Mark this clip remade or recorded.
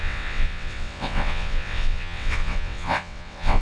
remade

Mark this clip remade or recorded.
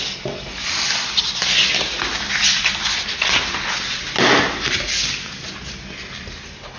recorded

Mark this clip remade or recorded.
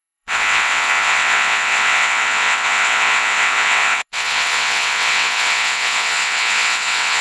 remade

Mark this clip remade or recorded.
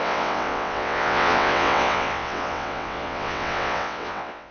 remade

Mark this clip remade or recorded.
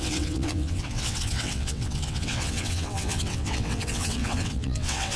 remade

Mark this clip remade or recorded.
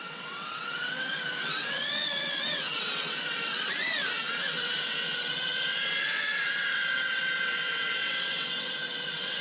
remade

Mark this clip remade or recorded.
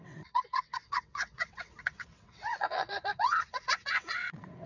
remade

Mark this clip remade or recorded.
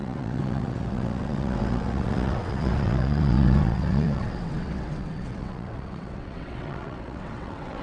remade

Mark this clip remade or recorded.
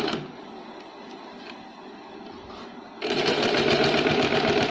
recorded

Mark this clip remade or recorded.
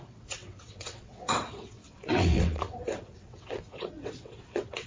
remade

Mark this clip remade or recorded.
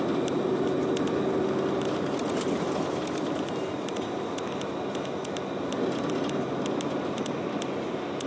recorded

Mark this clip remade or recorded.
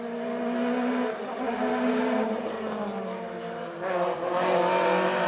recorded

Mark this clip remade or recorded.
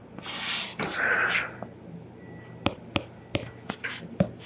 recorded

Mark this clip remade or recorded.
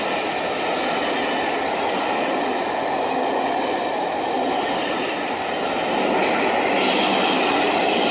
recorded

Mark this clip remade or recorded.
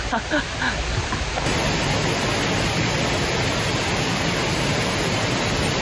recorded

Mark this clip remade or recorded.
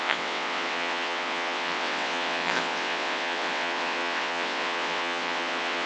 remade